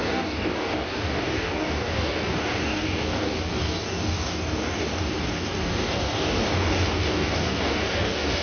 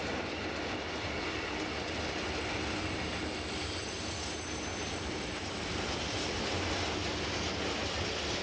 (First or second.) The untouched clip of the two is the second